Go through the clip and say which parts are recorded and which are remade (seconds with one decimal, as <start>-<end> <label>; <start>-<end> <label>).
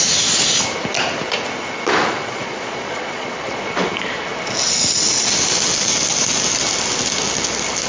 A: 0.0-2.2 recorded; 2.2-3.7 remade; 3.7-7.9 recorded